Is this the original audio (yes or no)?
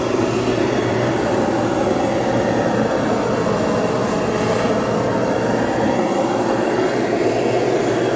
yes